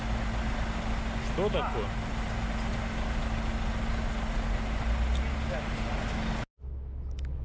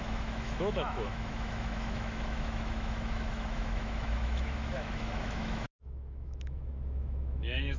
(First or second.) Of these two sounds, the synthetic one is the second